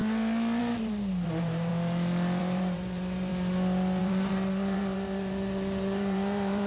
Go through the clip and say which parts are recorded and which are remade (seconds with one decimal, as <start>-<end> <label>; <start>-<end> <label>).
0.0-0.6 recorded; 0.6-1.7 remade; 1.7-2.4 recorded; 2.4-3.3 remade; 3.3-4.0 recorded; 4.0-6.7 remade